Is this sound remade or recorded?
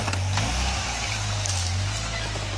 recorded